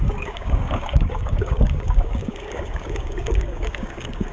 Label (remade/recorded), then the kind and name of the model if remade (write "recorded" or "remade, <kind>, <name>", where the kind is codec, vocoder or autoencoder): remade, codec, DAC